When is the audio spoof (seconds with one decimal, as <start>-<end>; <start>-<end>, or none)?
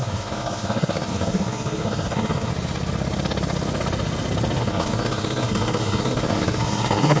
0.0-2.5; 4.6-7.2